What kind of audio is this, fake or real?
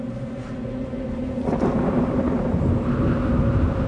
real